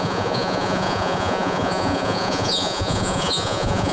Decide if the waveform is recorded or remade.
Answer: remade